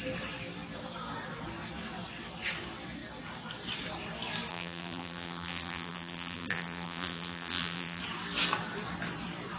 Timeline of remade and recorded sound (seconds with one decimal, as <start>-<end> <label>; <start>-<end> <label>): 0.0-4.5 recorded; 4.5-8.0 remade; 8.0-9.6 recorded

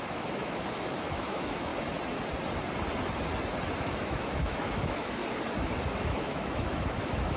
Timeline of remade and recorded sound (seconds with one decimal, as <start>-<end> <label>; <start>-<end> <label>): 0.0-1.7 remade; 1.7-3.8 recorded; 3.8-5.2 remade; 5.2-5.8 recorded; 5.8-7.4 remade